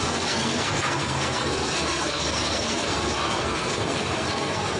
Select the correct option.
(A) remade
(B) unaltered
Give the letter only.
A